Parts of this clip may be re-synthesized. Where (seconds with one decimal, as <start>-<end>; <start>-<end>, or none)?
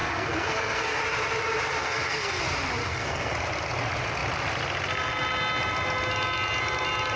0.0-1.0; 1.8-2.4; 2.8-3.3